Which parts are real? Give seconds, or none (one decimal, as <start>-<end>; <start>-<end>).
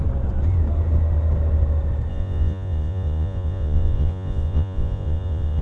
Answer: 0.0-2.1